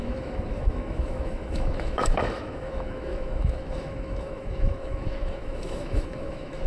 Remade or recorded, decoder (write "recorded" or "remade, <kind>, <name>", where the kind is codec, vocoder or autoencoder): remade, autoencoder, DAC-VAE